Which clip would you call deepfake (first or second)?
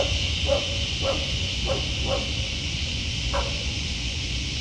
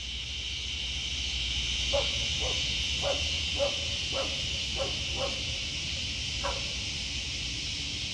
first